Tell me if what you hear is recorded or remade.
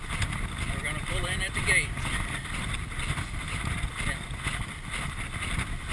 remade